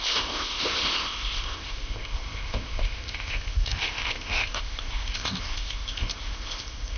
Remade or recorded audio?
remade